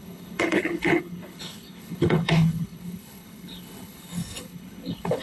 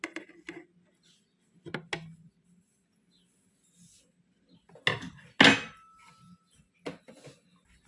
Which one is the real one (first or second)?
second